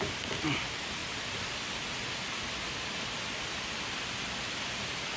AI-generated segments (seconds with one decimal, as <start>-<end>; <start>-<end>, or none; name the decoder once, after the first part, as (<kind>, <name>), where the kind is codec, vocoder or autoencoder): 0.0-1.0 (vocoder, BigVGAN v2); 4.1-5.2